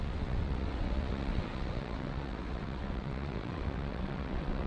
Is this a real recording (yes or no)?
no